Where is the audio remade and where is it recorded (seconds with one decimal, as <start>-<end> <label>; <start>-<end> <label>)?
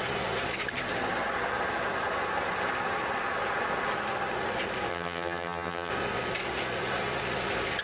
0.0-4.9 recorded; 4.9-5.9 remade; 5.9-7.8 recorded